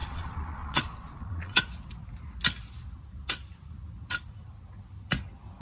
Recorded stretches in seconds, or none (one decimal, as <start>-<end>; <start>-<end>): 1.6-5.6